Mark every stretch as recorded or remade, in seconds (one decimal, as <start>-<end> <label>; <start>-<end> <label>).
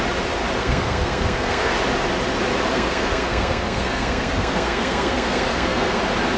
0.0-0.6 recorded; 0.6-1.7 remade; 1.7-2.7 recorded; 2.7-6.0 remade; 6.0-6.4 recorded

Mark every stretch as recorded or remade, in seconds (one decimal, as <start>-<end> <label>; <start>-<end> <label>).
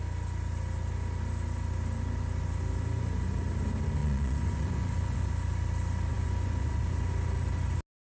0.0-4.0 recorded; 4.0-5.3 remade; 5.3-6.1 recorded; 6.1-6.8 remade; 6.8-8.2 recorded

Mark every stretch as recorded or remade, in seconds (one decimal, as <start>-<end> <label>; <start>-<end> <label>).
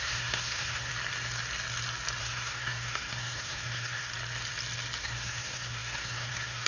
0.0-0.9 remade; 0.9-2.2 recorded; 2.2-4.1 remade; 4.1-5.0 recorded; 5.0-6.7 remade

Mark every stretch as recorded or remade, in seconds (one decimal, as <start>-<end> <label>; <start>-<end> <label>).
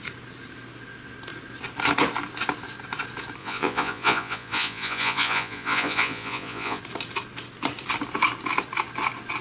0.0-3.4 recorded; 3.4-6.8 remade; 6.8-9.4 recorded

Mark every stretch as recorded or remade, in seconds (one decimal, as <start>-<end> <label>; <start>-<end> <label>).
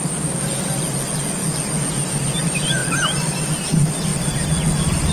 0.0-5.1 recorded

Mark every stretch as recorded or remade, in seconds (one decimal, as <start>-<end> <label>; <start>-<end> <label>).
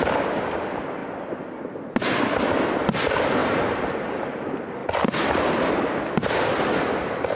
0.0-3.4 recorded; 3.4-4.3 remade; 4.3-7.4 recorded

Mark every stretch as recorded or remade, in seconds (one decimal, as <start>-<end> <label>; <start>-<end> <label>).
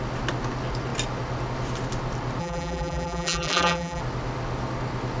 0.0-2.4 recorded; 2.4-4.0 remade; 4.0-5.2 recorded